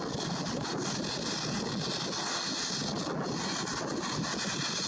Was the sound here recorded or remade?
recorded